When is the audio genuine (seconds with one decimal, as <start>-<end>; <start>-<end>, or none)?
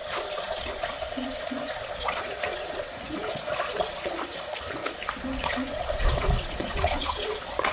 4.8-5.4